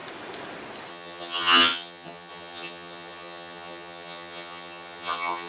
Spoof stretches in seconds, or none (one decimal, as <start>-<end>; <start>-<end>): 0.9-5.5